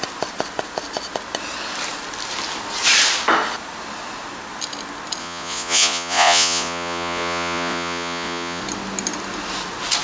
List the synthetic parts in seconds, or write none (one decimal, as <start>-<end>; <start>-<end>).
5.2-8.6